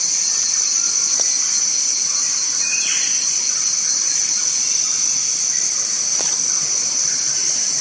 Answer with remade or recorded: recorded